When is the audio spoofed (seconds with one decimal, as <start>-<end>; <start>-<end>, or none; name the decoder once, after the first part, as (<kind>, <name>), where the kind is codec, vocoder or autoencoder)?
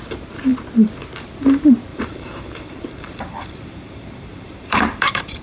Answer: 1.9-5.4 (vocoder, BigVGAN v2)